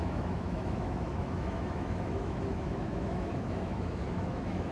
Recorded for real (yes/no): no